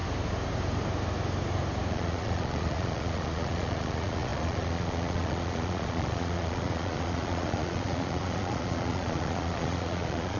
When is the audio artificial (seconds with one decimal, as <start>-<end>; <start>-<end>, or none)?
1.9-10.4